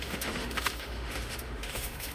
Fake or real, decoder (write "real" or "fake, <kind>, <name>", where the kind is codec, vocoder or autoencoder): fake, autoencoder, DAC-VAE